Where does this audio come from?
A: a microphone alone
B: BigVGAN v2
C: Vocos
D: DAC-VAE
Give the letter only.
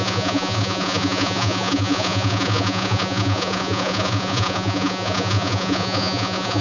C